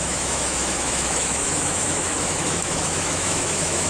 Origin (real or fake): fake